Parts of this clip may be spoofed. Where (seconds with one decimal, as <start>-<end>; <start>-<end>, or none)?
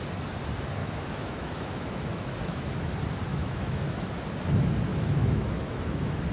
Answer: 0.8-2.9; 3.3-4.1; 4.9-6.3